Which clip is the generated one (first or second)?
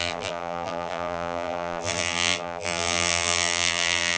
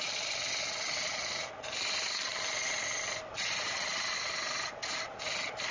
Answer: first